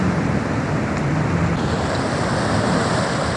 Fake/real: real